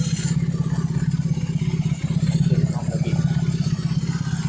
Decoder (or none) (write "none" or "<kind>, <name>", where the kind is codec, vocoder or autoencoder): none